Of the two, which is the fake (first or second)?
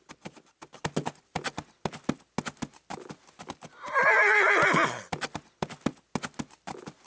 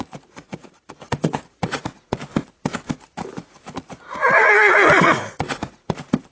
second